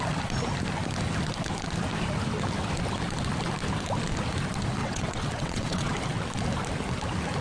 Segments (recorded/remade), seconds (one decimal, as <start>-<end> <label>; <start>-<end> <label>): 0.0-4.8 recorded; 4.8-5.9 remade; 5.9-7.4 recorded